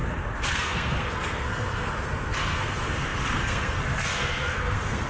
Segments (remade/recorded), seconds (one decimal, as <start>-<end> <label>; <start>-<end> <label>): 0.0-0.5 recorded; 0.5-5.1 remade